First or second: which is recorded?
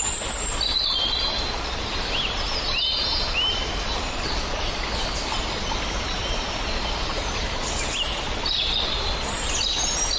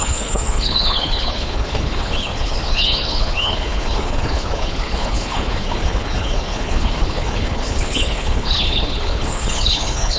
first